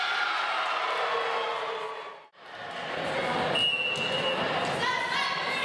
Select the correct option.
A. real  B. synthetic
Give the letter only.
A